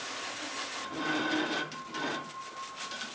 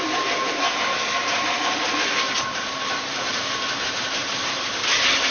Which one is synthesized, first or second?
second